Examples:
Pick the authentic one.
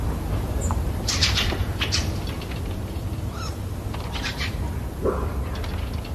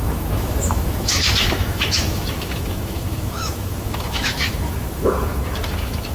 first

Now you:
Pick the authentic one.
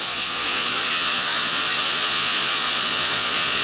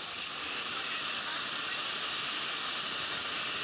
second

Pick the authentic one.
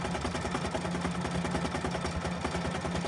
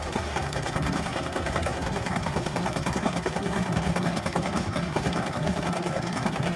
first